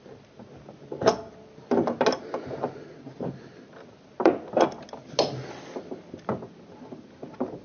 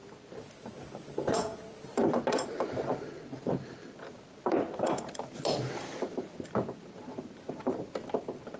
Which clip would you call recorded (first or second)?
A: first